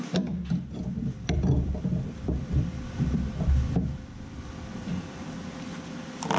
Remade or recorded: remade